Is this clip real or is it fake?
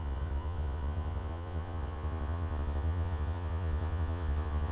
fake